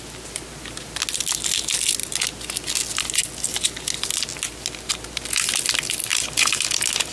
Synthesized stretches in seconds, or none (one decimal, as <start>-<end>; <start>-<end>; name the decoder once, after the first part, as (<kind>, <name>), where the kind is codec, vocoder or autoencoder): none